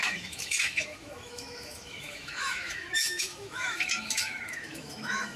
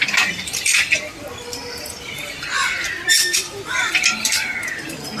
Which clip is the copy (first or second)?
first